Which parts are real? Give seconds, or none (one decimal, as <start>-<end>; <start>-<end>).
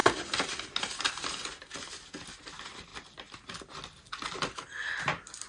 0.0-2.9; 3.6-5.5